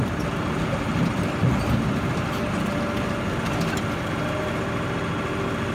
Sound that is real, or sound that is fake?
real